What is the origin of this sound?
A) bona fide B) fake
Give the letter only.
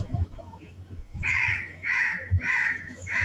B